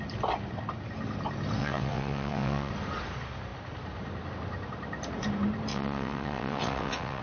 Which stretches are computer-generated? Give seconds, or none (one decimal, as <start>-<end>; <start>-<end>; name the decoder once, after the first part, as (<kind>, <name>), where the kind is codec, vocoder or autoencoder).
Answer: 1.6-2.7 (vocoder, WaveNeXt); 5.7-7.2